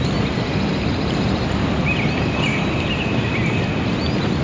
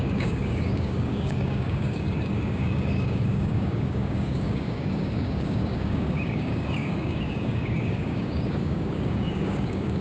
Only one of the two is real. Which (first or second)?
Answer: first